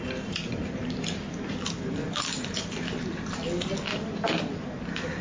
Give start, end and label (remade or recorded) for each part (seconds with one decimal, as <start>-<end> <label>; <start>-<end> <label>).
0.0-2.0 recorded; 2.0-4.4 remade; 4.4-5.2 recorded